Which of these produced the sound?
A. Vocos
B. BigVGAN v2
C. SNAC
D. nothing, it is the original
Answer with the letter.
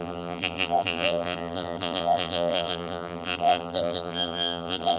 B